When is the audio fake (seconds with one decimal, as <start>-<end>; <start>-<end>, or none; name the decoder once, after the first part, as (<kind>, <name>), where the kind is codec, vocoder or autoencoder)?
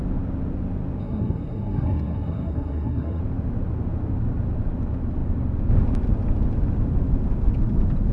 1.0-3.2 (codec, SNAC)